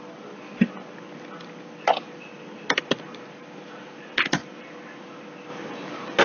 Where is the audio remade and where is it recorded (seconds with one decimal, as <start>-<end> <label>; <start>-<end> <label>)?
0.0-5.5 recorded; 5.5-6.2 remade

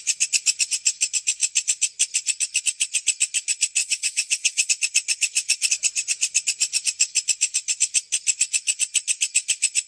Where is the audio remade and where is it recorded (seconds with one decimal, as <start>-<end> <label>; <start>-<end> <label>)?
0.0-3.8 recorded; 3.8-4.7 remade; 4.7-9.9 recorded